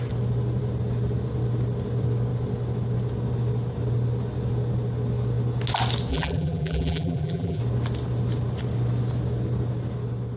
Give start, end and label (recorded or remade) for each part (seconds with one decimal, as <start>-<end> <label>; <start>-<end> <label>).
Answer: 0.0-6.1 recorded; 6.1-7.6 remade; 7.6-10.4 recorded